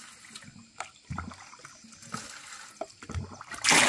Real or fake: real